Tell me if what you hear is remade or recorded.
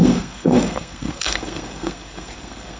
remade